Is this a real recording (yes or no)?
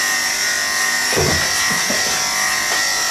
yes